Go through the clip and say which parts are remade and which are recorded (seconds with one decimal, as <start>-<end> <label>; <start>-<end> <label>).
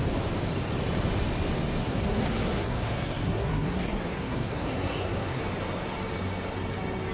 0.0-1.8 recorded; 1.8-5.4 remade; 5.4-7.1 recorded